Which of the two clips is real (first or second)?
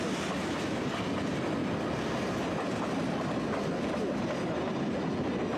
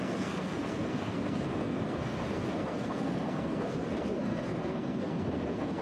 first